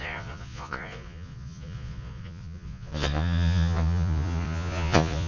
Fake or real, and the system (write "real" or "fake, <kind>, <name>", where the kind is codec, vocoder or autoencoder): fake, vocoder, Vocos